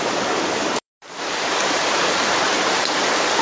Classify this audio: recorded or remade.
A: remade